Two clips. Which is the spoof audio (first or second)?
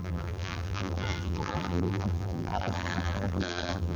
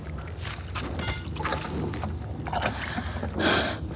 first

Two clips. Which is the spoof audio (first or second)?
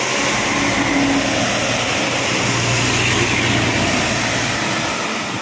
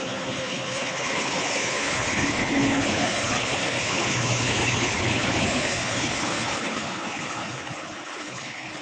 second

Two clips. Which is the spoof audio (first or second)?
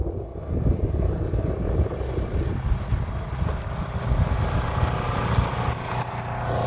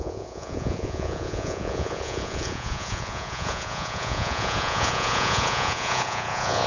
second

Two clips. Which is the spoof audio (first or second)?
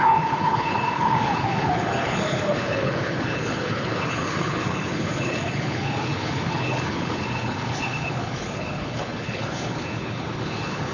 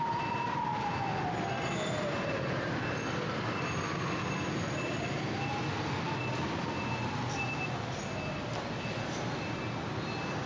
first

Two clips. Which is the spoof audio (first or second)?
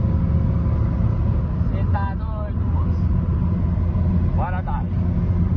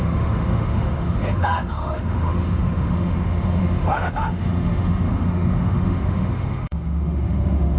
second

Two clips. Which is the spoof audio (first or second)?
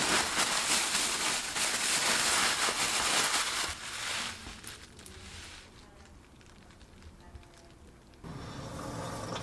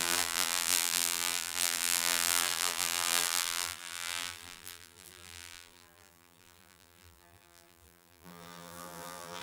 second